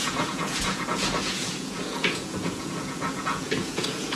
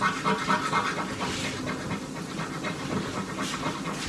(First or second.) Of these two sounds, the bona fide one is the second